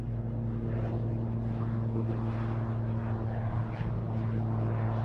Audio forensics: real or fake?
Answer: real